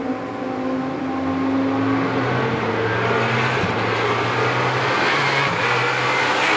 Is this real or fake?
real